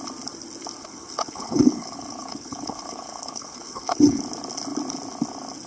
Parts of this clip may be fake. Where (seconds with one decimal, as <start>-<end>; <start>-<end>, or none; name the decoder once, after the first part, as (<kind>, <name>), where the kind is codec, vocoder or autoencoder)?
0.8-4.2 (codec, HILCodec)